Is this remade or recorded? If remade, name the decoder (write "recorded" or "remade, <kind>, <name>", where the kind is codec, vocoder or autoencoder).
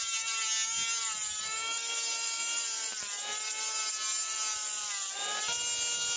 recorded